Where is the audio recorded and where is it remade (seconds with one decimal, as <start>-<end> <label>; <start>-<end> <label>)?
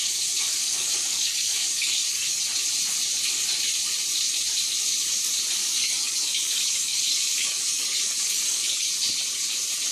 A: 0.0-0.6 recorded; 0.6-2.4 remade; 2.4-5.6 recorded; 5.6-8.9 remade; 8.9-9.9 recorded